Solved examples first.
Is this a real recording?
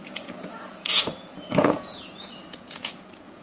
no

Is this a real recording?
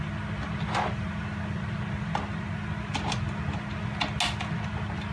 yes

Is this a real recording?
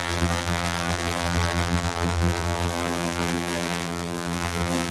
no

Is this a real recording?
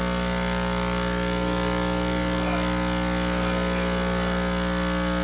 yes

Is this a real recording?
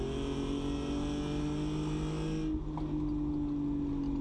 yes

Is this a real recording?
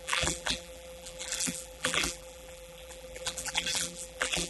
no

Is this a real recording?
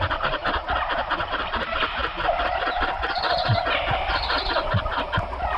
yes